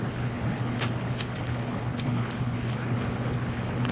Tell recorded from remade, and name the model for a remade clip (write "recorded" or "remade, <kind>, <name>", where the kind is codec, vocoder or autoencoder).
remade, codec, HILCodec